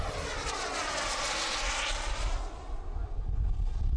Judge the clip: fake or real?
real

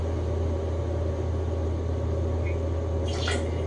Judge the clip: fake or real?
real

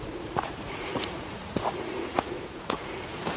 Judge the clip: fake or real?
fake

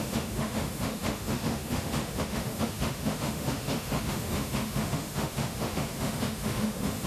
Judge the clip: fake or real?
fake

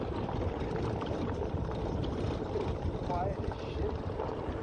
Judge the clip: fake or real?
real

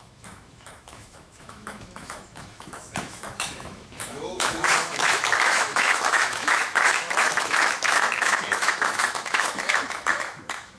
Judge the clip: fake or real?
fake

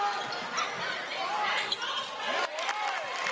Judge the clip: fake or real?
real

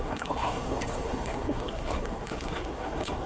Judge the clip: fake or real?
fake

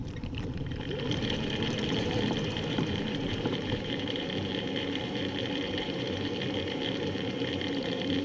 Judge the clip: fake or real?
fake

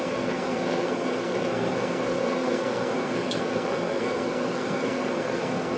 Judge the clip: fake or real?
fake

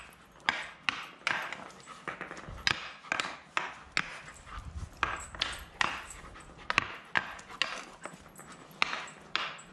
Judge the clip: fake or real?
real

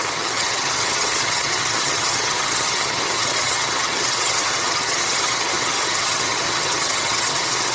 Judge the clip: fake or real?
fake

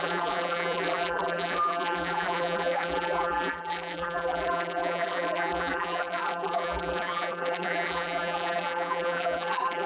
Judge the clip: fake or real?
fake